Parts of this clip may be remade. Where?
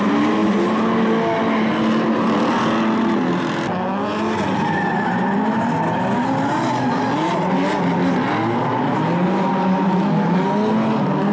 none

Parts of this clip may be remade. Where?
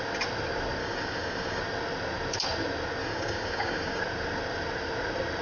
0.8-1.6; 3.0-4.0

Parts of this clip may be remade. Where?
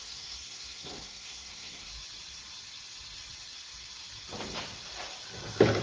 0.0-1.9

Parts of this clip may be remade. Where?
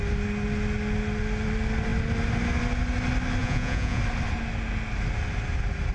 3.4-4.0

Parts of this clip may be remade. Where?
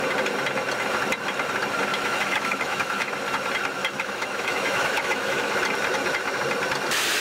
1.9-3.1; 3.8-5.5